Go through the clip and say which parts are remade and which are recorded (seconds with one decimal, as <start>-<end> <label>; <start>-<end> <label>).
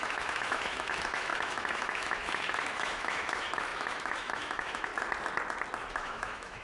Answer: 0.0-4.9 remade; 4.9-5.9 recorded; 5.9-6.6 remade